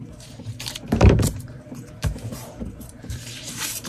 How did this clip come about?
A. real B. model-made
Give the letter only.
B